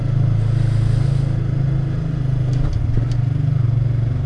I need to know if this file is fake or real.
real